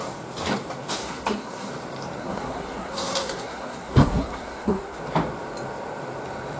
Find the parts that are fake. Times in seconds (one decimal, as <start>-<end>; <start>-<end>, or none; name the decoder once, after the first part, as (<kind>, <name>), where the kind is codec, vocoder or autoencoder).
1.0-1.7 (codec, SNAC); 2.2-5.0